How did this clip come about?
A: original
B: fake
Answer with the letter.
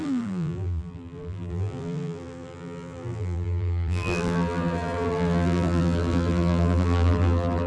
B